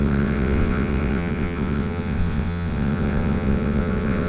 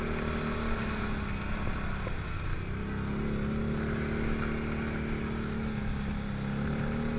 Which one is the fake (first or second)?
first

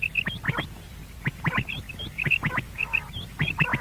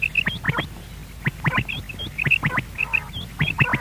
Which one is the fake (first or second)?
first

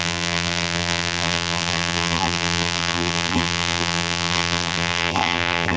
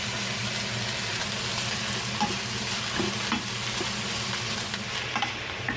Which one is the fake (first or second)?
first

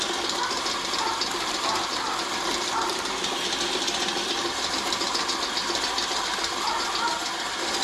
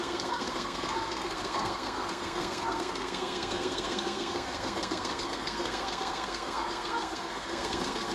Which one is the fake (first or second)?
second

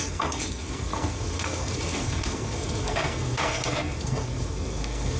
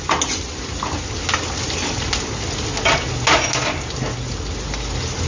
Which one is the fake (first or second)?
first